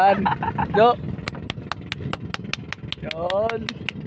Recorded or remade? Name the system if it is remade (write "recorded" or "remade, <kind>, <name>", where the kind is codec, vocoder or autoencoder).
recorded